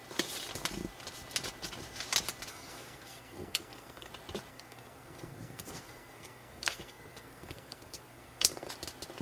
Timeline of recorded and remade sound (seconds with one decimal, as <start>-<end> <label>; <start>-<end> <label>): 0.0-2.5 recorded; 2.5-4.1 remade; 4.1-4.5 recorded; 4.5-8.7 remade; 8.7-9.2 recorded